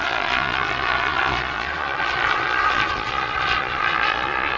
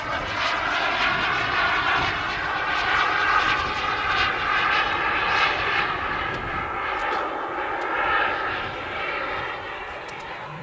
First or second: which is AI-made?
first